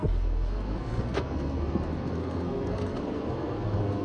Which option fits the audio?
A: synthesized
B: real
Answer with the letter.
A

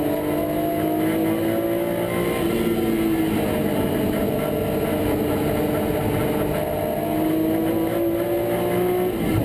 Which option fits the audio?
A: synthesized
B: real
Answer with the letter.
B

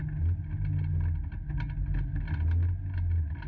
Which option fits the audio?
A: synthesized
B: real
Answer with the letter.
B